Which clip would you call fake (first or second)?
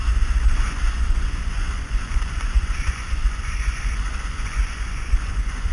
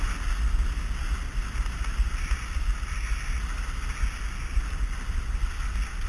first